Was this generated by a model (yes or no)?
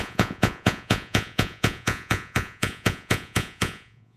yes